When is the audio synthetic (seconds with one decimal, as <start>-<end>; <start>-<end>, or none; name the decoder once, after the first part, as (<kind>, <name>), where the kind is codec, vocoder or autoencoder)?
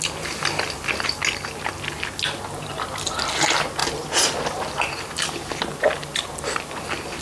none